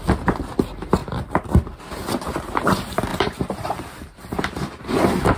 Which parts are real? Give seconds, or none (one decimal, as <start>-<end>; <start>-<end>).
0.0-1.0; 1.8-3.1; 4.8-5.4